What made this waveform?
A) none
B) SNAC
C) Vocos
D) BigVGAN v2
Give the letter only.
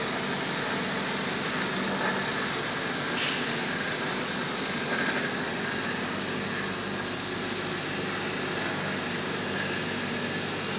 A